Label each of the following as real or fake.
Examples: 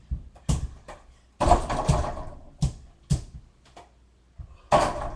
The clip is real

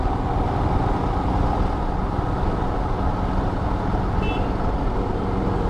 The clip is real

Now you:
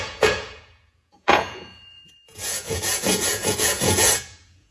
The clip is fake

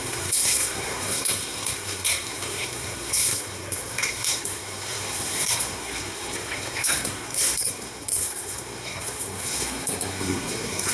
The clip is fake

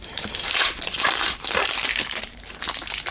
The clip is fake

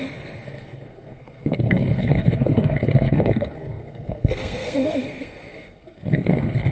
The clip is fake